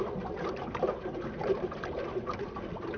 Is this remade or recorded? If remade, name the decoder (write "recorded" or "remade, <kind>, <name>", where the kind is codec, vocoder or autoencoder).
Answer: recorded